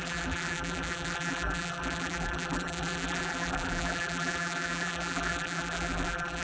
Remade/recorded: remade